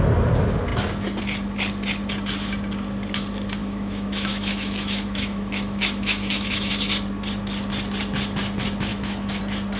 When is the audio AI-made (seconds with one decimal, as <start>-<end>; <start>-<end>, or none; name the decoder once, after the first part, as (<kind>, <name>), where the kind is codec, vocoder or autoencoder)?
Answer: 3.6-6.7 (autoencoder, DAC-VAE); 8.9-9.4